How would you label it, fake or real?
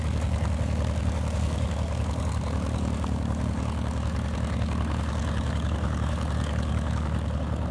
fake